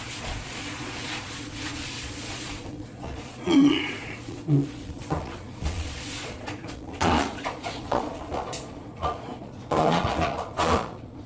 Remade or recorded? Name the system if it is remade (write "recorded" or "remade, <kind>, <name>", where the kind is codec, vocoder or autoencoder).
remade, vocoder, Vocos